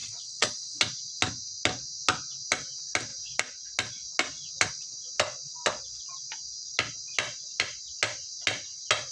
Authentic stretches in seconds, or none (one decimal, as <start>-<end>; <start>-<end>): 0.8-9.1